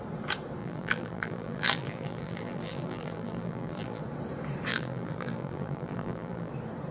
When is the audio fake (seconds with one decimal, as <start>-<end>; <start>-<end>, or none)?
0.6-4.0; 4.7-6.5